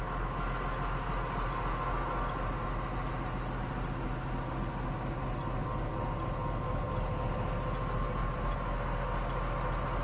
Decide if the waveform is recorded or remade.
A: recorded